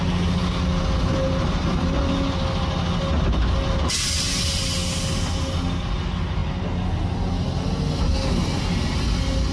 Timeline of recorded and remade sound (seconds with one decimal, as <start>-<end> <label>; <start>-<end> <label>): 0.0-9.5 recorded